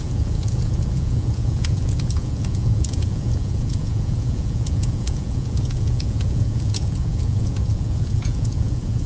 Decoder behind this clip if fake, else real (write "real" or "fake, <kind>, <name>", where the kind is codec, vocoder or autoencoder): fake, vocoder, Vocos